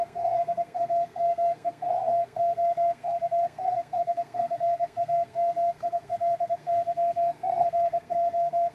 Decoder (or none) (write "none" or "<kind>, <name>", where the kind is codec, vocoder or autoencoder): codec, SNAC